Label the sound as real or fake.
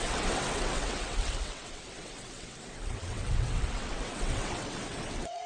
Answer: fake